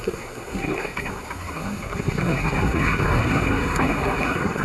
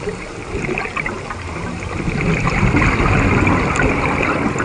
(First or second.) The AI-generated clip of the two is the first